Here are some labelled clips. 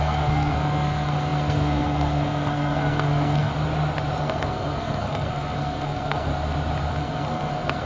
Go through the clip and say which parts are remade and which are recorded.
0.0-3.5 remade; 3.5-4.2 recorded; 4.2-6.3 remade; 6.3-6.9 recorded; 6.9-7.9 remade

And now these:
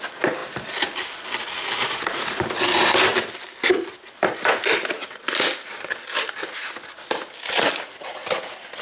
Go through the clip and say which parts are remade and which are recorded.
0.0-1.8 recorded; 1.8-2.4 remade; 2.4-8.8 recorded

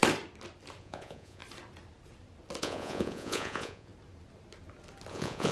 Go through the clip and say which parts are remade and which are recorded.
0.0-0.8 recorded; 0.8-1.4 remade; 1.4-2.6 recorded; 2.6-3.9 remade; 3.9-5.1 recorded; 5.1-5.5 remade

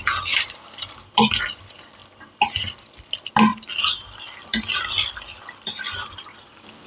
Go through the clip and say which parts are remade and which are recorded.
0.0-2.0 remade; 2.0-2.6 recorded; 2.6-6.9 remade